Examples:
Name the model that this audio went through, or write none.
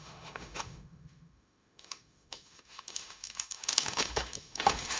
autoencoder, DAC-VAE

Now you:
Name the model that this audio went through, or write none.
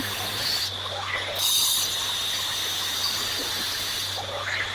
none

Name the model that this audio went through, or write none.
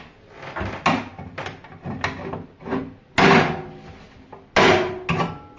none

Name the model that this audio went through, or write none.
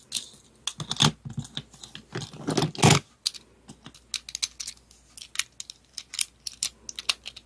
none